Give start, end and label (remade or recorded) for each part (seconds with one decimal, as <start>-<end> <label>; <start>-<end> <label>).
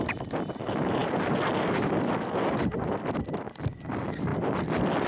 0.0-5.1 recorded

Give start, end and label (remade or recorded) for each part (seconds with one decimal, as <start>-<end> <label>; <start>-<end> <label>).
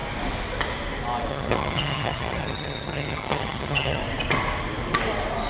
0.0-1.3 recorded; 1.3-4.0 remade; 4.0-5.5 recorded